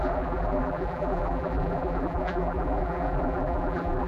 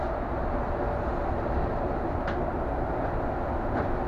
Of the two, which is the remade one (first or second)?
first